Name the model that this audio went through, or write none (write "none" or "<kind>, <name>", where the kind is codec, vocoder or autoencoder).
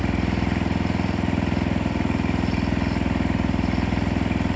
none